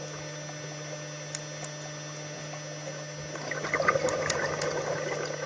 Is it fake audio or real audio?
real